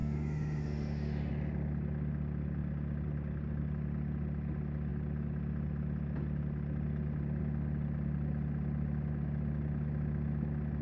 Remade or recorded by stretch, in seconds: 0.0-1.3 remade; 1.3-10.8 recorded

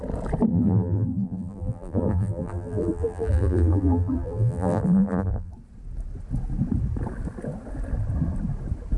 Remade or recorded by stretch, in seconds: 0.0-0.5 recorded; 0.5-5.5 remade; 5.5-9.0 recorded

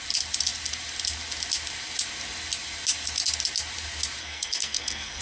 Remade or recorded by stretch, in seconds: 0.0-4.2 recorded; 4.2-5.2 remade

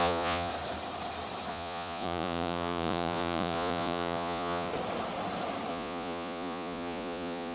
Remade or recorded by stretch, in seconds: 0.0-0.5 remade; 0.5-1.5 recorded; 1.5-4.7 remade; 4.7-5.7 recorded; 5.7-7.5 remade